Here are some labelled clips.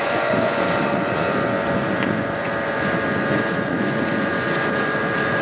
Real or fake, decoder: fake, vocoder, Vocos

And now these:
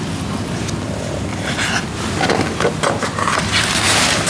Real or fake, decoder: real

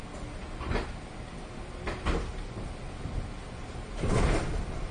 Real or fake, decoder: real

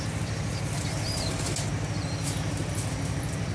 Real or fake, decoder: real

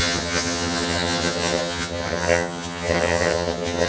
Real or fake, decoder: fake, vocoder, HiFi-GAN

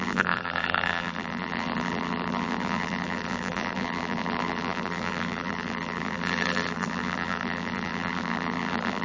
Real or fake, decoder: fake, vocoder, BigVGAN v2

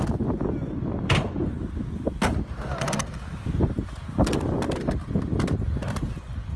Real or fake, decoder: real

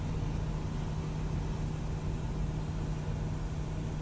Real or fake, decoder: real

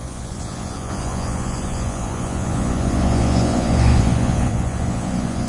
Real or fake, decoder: fake, vocoder, Vocos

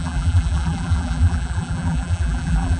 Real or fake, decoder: fake, vocoder, BigVGAN v2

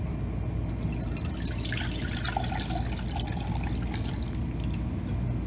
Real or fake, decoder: real